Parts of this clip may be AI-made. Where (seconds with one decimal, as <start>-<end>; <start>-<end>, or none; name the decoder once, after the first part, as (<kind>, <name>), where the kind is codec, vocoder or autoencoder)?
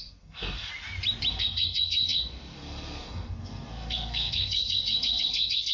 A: 0.0-0.7 (codec, SNAC); 1.3-5.7